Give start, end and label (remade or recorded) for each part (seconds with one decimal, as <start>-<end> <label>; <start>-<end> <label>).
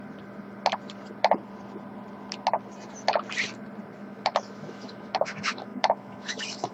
0.0-4.0 recorded; 4.0-6.7 remade